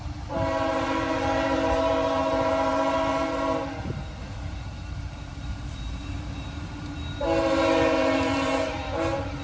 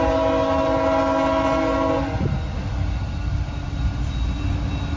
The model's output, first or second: first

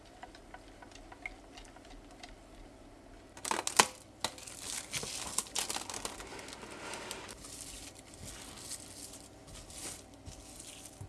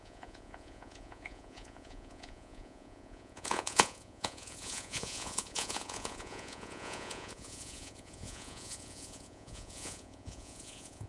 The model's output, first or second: second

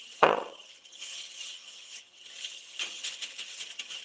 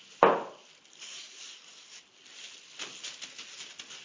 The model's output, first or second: first